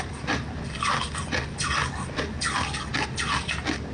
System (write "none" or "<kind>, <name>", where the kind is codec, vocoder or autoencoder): none